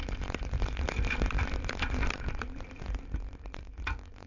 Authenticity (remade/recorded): recorded